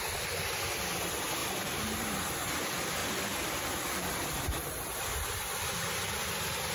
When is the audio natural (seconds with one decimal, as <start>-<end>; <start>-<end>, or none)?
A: 0.0-1.4; 2.1-3.0; 4.9-6.7